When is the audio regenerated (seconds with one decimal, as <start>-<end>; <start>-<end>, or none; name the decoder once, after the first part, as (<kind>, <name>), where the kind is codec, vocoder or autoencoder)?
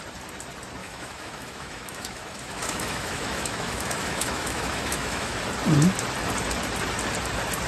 0.8-5.4 (autoencoder, DAC-VAE)